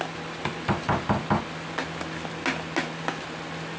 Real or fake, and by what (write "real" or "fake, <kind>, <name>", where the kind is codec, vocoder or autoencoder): real